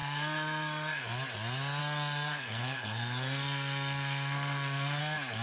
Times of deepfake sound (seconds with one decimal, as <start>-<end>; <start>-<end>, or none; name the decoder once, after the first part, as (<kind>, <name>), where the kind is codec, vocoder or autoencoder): 0.0-1.0 (codec, SNAC); 1.8-5.0